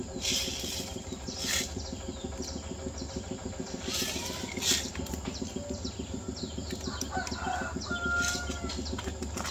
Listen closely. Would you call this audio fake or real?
real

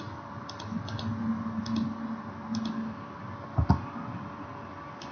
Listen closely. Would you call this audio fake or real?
real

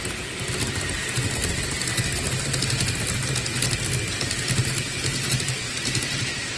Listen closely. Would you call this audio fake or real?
real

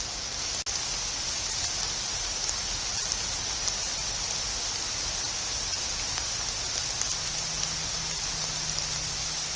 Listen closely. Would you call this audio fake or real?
real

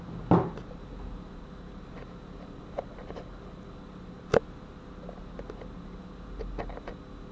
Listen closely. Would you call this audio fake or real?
real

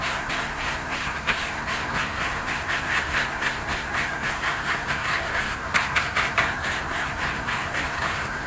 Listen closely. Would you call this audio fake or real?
fake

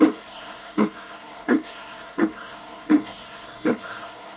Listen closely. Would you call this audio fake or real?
fake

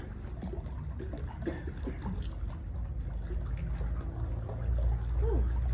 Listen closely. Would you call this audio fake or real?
real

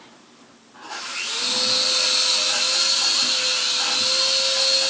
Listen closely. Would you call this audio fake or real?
real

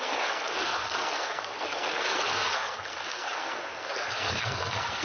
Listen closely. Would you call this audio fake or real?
fake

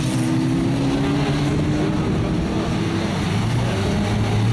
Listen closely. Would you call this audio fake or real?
real